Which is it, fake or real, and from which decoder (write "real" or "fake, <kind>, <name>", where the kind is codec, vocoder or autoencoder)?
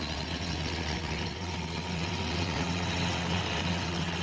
fake, vocoder, WaveNeXt